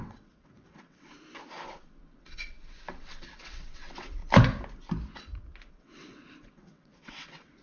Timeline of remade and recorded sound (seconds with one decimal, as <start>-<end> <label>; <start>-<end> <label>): 0.0-1.1 remade; 1.1-1.7 recorded; 1.7-4.2 remade; 4.2-5.7 recorded; 5.7-7.6 remade